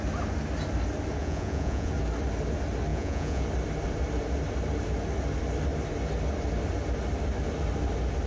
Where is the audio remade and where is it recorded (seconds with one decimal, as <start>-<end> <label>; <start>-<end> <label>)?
0.0-1.2 recorded; 1.2-1.9 remade; 1.9-2.9 recorded; 2.9-3.4 remade; 3.4-8.3 recorded